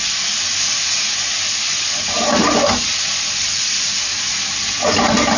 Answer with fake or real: real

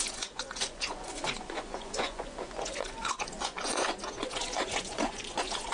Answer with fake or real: fake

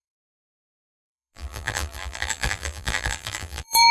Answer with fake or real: fake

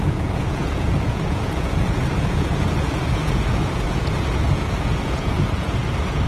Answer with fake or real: fake